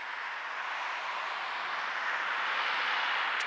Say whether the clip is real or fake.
real